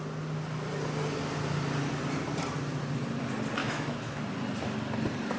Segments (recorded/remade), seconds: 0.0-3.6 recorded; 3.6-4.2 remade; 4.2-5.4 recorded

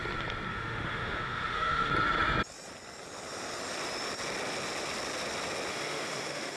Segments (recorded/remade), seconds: 0.0-0.5 recorded; 0.5-1.9 remade; 1.9-5.7 recorded; 5.7-6.6 remade

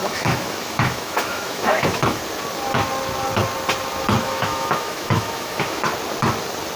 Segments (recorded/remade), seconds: 0.0-2.2 remade; 2.2-4.2 recorded; 4.2-5.8 remade; 5.8-6.8 recorded